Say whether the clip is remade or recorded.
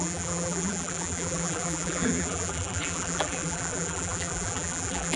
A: remade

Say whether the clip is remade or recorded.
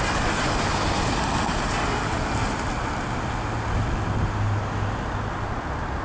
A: recorded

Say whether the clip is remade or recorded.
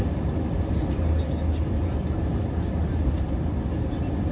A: recorded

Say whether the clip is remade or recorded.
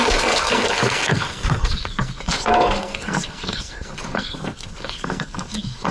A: remade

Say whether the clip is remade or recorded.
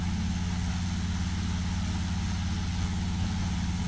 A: recorded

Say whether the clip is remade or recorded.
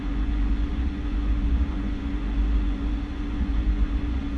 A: remade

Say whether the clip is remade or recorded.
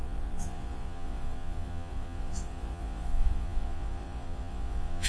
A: remade